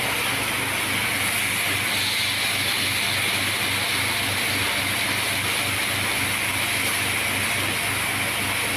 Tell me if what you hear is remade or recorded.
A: recorded